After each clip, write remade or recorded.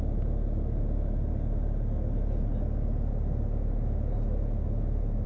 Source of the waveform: recorded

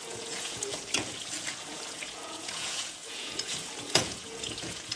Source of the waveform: remade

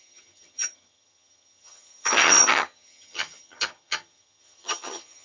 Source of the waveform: remade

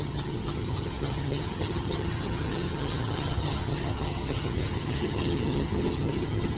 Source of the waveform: remade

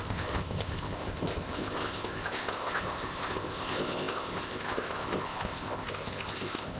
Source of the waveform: remade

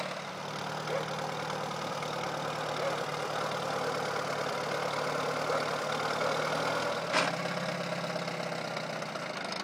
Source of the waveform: recorded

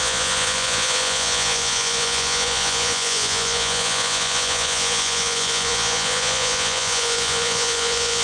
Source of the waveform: remade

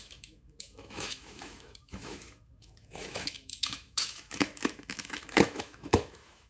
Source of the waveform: remade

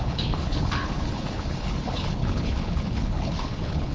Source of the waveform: remade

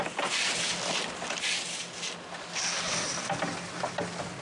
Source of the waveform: recorded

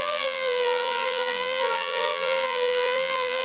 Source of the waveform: remade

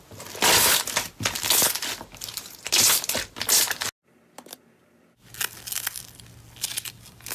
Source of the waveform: recorded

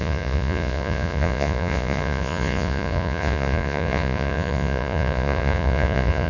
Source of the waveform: remade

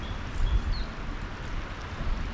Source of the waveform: recorded